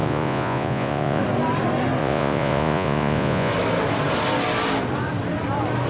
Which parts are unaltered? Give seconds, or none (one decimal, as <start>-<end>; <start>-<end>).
1.2-2.0; 3.5-5.9